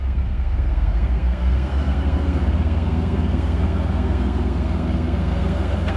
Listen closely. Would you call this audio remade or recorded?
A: remade